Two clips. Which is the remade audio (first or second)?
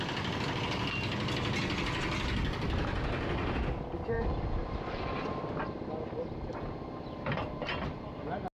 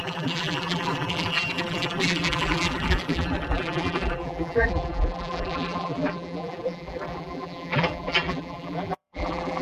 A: second